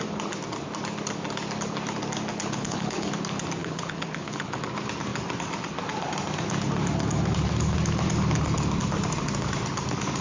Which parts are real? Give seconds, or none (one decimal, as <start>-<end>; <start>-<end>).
0.0-2.3; 3.1-3.6; 4.6-10.2